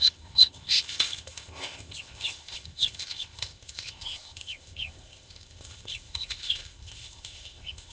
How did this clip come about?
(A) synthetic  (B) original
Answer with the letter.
A